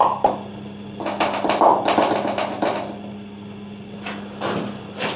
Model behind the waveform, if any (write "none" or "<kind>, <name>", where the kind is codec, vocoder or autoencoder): none